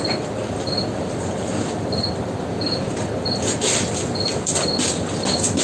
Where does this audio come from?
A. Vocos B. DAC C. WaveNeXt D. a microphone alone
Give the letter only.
D